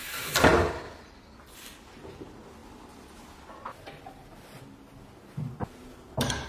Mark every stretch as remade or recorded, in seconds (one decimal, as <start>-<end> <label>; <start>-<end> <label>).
0.0-6.5 recorded